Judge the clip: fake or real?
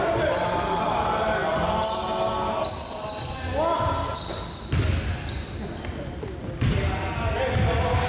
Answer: real